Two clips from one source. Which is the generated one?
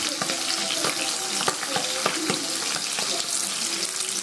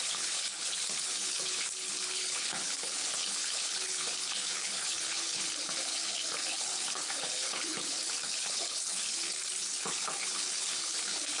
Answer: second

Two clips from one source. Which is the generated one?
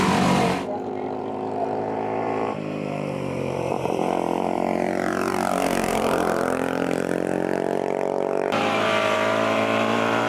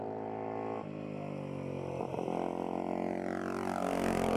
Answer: first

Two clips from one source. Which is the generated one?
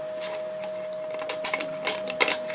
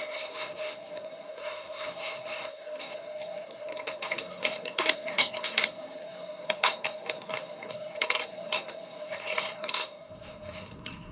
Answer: second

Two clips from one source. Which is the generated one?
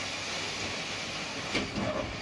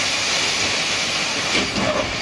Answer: second